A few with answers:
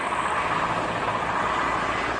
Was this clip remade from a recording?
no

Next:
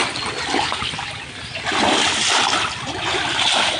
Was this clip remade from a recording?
no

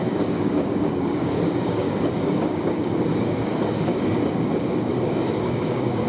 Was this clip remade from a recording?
yes